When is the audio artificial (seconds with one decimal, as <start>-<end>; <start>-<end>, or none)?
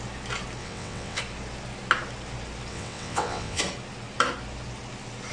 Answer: 0.6-1.2; 2.7-3.6